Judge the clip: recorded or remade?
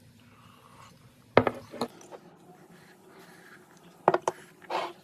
recorded